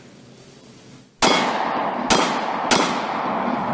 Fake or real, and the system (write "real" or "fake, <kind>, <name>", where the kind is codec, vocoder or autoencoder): real